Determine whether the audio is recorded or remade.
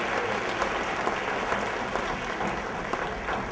recorded